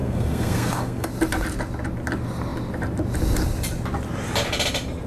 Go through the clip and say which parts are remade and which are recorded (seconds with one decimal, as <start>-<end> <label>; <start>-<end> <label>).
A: 0.0-1.1 remade; 1.1-5.1 recorded